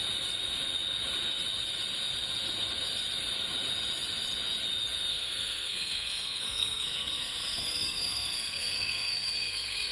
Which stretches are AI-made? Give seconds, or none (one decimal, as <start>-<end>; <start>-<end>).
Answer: 5.1-9.9